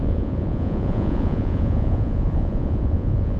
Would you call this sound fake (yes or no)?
yes